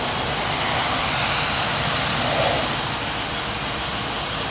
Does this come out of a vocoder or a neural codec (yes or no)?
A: no